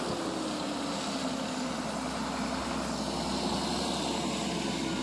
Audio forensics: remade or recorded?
recorded